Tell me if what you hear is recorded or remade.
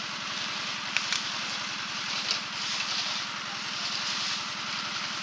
recorded